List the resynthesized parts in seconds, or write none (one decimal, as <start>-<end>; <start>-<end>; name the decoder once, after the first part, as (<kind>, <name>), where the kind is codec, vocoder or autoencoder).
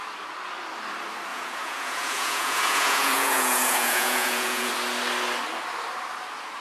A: 1.3-4.7 (vocoder, Vocos)